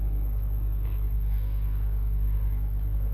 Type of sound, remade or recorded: remade